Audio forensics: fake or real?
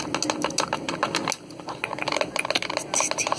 real